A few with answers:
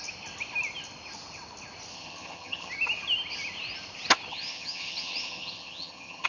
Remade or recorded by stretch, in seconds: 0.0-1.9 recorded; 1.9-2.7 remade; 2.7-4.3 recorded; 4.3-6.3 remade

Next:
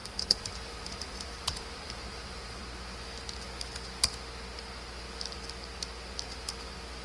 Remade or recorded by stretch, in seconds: 0.0-2.6 remade; 2.6-7.0 recorded